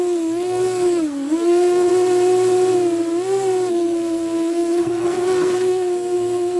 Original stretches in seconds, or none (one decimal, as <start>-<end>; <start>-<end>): 1.9-3.7